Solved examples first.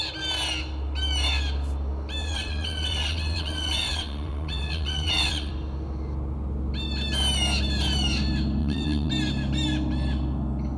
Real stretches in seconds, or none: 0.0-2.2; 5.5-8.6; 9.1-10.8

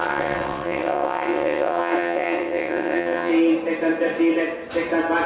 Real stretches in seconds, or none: 3.3-5.3

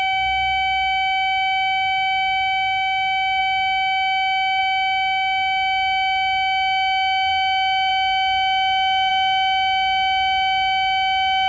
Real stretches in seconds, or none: 0.0-11.5

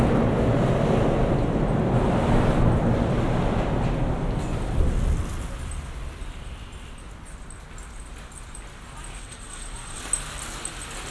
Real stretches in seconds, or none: 0.0-9.2; 10.0-11.1

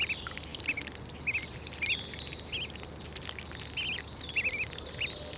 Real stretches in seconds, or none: 0.0-5.4

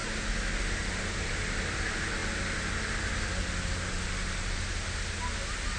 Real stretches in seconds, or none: 0.0-5.8

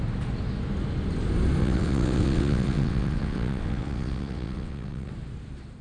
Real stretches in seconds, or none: 0.0-1.6; 5.1-5.8

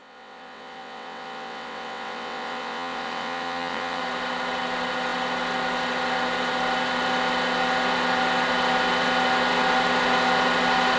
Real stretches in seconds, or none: 4.0-11.0